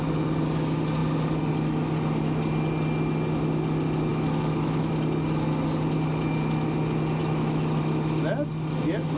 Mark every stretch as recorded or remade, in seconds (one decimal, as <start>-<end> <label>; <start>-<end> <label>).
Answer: 0.0-4.1 recorded; 4.1-4.9 remade; 4.9-7.2 recorded; 7.2-7.8 remade; 7.8-9.2 recorded